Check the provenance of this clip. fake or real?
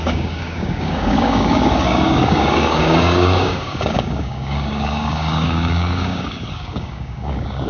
fake